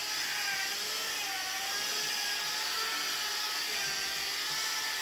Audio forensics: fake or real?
real